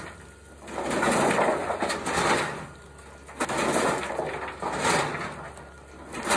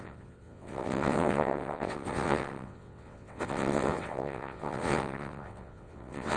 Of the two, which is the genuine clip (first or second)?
first